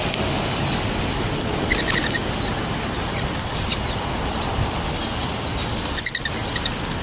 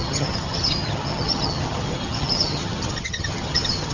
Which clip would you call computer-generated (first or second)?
second